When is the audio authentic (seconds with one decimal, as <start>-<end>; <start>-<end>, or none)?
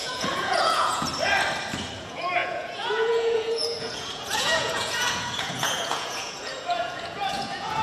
1.1-2.0